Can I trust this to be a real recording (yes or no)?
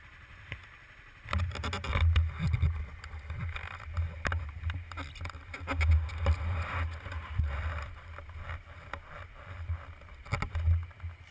yes